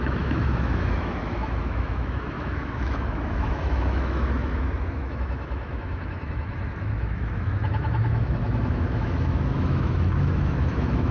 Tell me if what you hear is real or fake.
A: fake